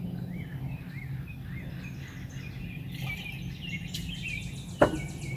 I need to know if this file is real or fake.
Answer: real